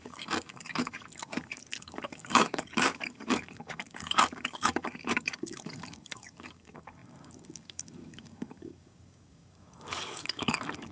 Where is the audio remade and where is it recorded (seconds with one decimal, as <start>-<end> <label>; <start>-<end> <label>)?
0.0-10.9 remade